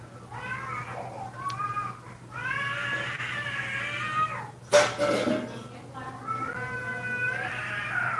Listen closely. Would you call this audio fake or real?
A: real